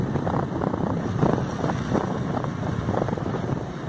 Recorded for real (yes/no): yes